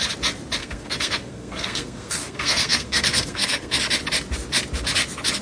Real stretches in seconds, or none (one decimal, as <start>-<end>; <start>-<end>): 0.0-0.6; 3.8-5.4